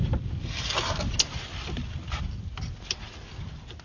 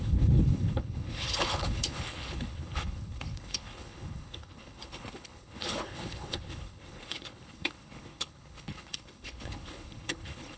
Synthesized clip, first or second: second